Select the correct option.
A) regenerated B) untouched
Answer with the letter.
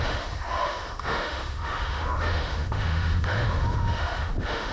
A